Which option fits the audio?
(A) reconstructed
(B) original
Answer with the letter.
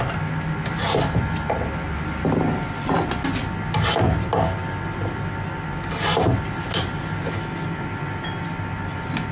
B